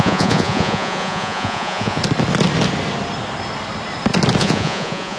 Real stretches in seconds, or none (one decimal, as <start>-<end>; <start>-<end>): 2.0-4.4